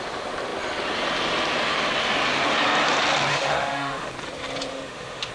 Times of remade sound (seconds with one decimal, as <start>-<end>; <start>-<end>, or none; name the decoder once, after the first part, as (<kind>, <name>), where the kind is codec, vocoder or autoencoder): 3.3-4.1 (autoencoder, DAC-VAE); 4.7-5.3